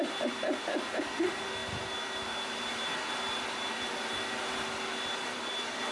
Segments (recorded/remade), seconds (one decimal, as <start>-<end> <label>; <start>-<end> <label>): 0.0-5.9 recorded